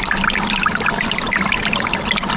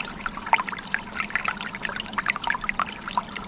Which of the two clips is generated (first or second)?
first